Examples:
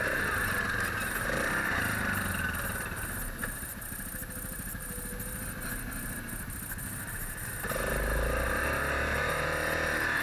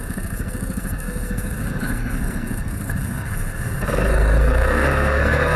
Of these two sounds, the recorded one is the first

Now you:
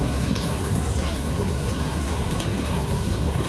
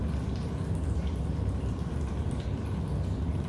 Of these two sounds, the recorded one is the second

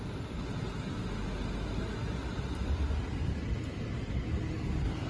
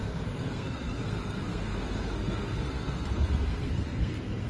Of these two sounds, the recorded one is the first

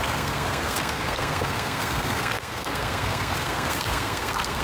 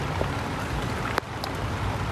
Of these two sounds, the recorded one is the second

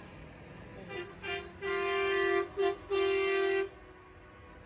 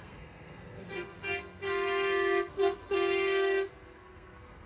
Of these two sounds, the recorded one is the first